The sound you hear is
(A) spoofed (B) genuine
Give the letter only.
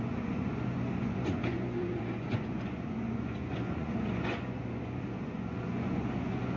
A